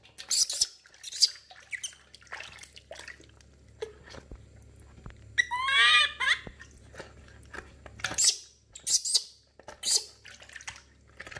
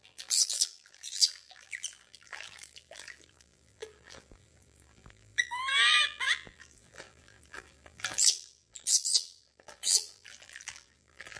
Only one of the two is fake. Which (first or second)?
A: second